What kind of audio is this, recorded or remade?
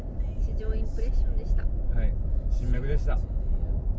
remade